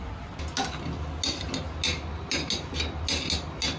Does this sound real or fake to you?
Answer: real